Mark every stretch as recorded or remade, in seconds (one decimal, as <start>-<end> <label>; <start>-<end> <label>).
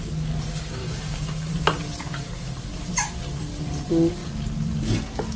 0.0-0.8 recorded; 0.8-1.5 remade; 1.5-5.4 recorded